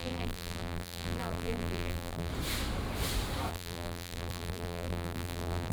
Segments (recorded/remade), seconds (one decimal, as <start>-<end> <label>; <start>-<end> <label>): 0.0-2.3 remade; 2.3-3.5 recorded; 3.5-5.7 remade

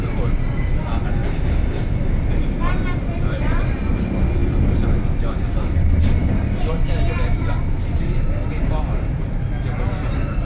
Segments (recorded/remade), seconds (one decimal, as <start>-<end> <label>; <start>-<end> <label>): 0.0-1.2 remade; 1.2-1.8 recorded; 1.8-10.4 remade